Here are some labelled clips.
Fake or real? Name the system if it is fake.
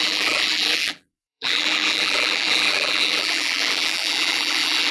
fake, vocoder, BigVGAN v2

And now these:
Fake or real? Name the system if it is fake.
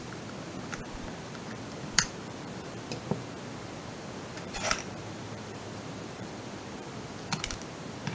fake, vocoder, BigVGAN v2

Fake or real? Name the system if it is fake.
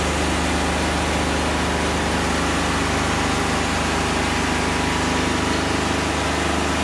real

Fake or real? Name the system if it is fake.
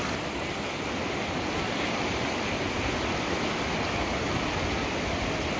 real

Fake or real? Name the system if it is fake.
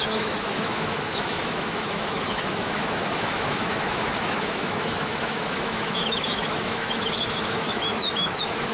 fake, autoencoder, DAC-VAE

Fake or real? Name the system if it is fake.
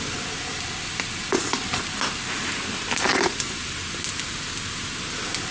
real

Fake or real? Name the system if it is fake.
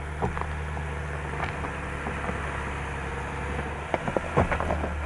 real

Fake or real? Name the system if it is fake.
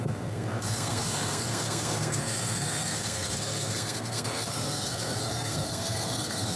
fake, codec, SNAC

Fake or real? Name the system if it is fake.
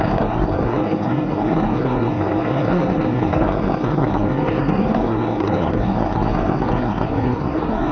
fake, codec, SNAC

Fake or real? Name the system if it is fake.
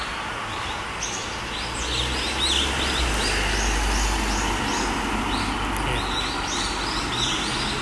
real